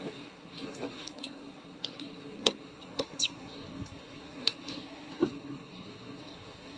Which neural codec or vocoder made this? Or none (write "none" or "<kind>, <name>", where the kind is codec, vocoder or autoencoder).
codec, SNAC